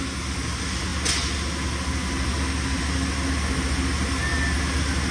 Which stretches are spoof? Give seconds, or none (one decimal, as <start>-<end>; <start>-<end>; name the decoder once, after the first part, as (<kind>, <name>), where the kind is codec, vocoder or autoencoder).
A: none